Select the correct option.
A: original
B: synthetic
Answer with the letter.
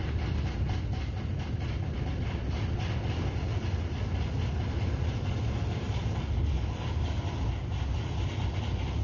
A